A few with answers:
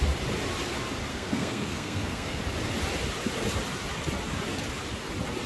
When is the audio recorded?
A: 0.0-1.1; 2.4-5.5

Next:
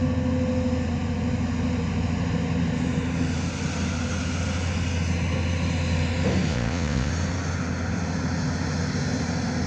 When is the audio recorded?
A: 0.0-6.5; 7.1-9.7

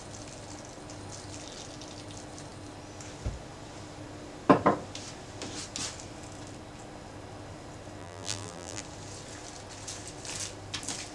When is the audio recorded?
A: 0.0-8.0; 8.8-11.1

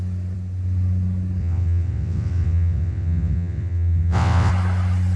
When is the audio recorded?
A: 0.0-1.4; 4.5-5.2